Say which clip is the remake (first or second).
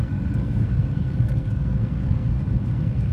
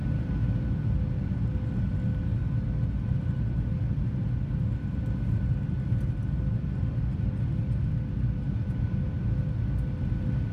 first